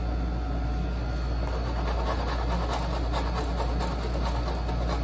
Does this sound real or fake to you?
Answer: real